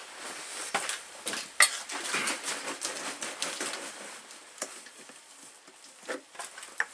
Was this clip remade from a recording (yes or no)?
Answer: no